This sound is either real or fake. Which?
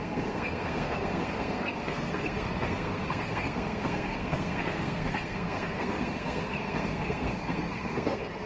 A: fake